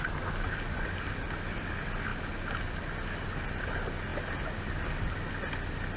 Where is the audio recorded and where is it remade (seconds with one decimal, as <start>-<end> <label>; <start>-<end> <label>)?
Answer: 0.0-6.0 recorded